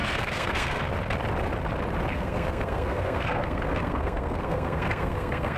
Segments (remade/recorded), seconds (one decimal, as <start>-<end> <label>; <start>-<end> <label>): 0.0-0.8 remade; 0.8-2.1 recorded; 2.1-5.6 remade